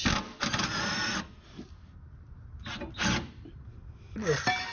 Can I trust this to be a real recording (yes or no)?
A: yes